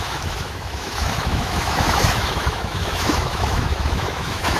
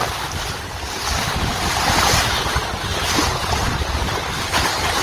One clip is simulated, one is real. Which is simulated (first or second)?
first